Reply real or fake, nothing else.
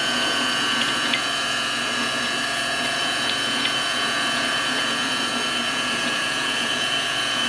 fake